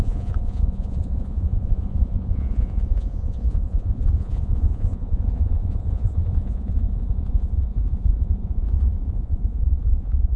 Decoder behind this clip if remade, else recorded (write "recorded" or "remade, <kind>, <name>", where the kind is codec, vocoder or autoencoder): remade, vocoder, Vocos